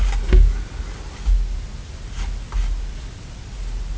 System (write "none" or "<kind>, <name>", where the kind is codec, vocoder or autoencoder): none